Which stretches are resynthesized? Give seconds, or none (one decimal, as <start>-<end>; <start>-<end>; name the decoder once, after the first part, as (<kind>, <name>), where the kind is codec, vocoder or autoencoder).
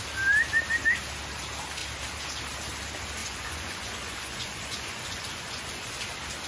3.2-5.9 (vocoder, Vocos)